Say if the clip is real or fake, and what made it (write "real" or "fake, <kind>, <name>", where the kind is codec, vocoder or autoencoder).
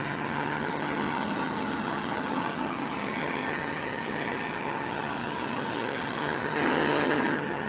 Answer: fake, vocoder, HiFi-GAN